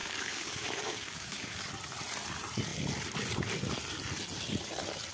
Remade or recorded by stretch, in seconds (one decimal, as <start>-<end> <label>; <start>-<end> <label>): 0.0-1.7 remade; 1.7-5.1 recorded